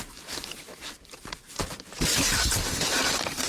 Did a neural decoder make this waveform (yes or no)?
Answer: yes